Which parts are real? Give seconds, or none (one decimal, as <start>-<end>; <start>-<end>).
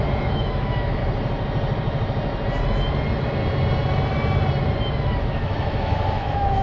1.0-5.0